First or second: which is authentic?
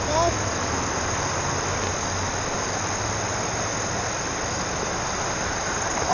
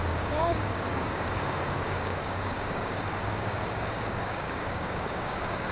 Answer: first